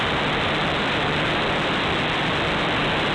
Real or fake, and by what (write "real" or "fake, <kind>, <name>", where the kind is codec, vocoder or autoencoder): real